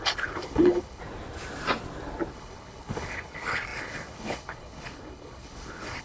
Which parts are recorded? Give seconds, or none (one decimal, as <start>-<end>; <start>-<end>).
1.0-2.3